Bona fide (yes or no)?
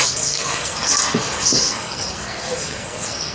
no